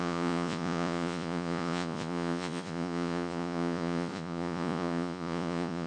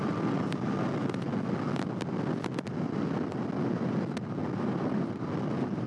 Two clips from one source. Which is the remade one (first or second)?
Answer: first